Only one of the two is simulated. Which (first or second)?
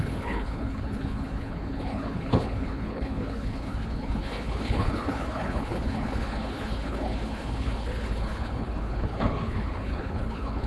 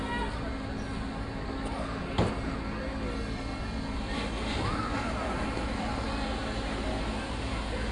first